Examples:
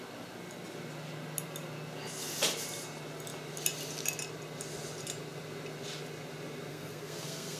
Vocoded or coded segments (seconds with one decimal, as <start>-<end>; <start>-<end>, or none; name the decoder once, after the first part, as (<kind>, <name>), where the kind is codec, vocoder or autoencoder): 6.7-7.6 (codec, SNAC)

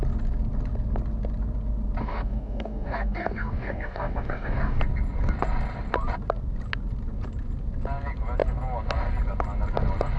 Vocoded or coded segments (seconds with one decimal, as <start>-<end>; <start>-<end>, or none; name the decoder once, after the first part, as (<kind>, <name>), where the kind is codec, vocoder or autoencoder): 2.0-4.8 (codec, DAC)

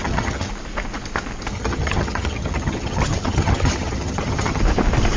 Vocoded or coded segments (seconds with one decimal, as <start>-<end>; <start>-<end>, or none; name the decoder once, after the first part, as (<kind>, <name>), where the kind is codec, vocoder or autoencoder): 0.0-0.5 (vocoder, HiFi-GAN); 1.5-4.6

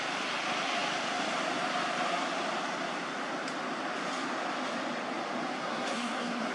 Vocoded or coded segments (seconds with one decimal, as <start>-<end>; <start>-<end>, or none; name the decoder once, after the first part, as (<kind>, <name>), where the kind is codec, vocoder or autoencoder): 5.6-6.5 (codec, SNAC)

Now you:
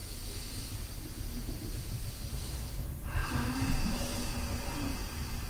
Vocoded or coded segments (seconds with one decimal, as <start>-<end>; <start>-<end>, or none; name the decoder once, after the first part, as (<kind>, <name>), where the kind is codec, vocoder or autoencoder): none